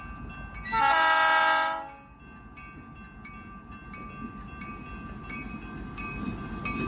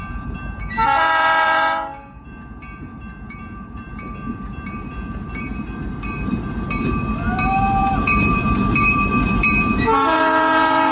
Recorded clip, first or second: first